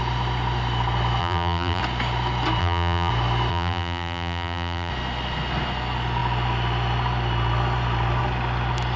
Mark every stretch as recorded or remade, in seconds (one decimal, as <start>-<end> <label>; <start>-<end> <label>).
0.0-1.2 recorded; 1.2-1.8 remade; 1.8-2.6 recorded; 2.6-3.1 remade; 3.1-3.5 recorded; 3.5-4.9 remade; 4.9-9.0 recorded